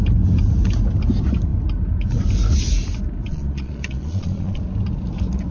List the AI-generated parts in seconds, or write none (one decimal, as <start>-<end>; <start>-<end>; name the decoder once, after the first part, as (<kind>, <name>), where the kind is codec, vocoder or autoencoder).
3.3-4.6 (vocoder, Vocos)